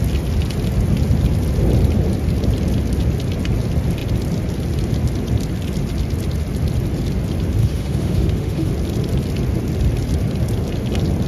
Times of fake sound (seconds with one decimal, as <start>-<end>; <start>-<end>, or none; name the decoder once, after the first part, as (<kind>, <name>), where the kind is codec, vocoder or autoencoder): 7.6-8.7 (autoencoder, DAC-VAE)